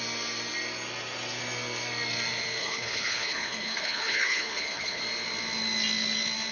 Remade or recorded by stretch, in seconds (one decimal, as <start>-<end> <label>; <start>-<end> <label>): 0.0-2.6 recorded; 2.6-5.0 remade; 5.0-6.5 recorded